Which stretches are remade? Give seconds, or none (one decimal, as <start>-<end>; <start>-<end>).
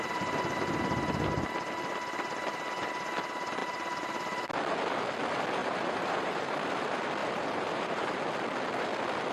5.6-6.5; 7.2-8.2